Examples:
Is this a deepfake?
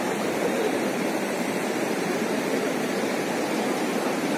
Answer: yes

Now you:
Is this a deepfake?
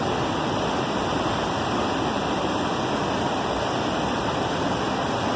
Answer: yes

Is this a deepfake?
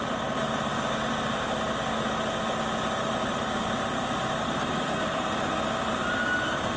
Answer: no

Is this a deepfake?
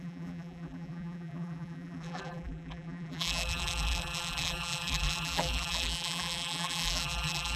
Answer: yes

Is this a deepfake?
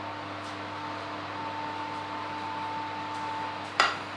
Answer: yes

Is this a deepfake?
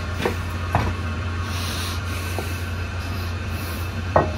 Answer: yes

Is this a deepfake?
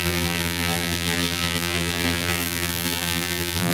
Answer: yes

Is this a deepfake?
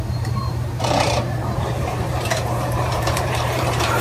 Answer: yes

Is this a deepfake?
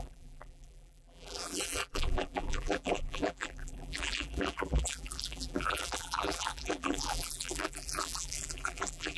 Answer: yes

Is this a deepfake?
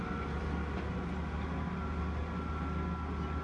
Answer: no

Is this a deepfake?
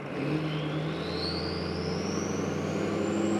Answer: no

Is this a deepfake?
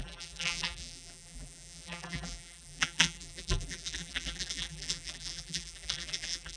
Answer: yes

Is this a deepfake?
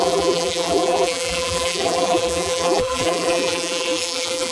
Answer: yes